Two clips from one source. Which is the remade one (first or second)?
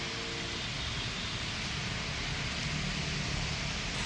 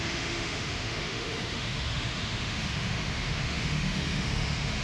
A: second